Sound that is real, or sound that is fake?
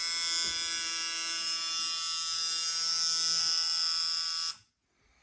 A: real